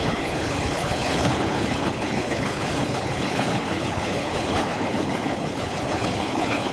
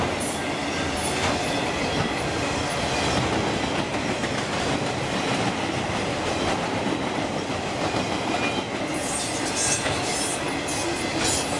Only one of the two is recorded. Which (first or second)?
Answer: second